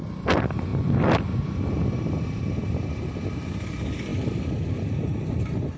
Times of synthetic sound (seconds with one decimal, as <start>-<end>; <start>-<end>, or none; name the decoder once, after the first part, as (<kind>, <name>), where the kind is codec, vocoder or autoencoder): none